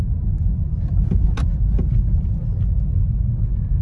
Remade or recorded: recorded